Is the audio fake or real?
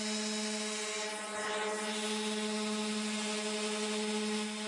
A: real